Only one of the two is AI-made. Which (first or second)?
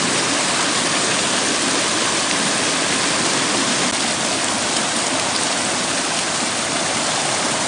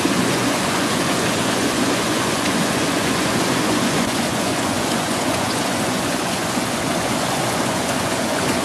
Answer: second